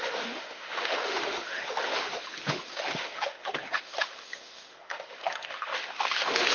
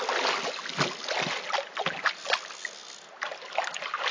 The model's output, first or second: first